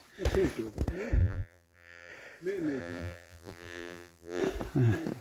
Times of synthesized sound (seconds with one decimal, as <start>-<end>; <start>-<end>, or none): 1.2-2.1; 2.8-4.4